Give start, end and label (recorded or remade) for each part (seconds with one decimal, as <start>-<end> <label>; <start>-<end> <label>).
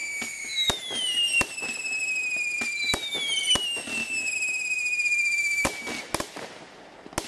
0.0-7.3 recorded